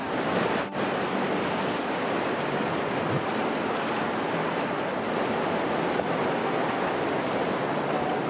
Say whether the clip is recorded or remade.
recorded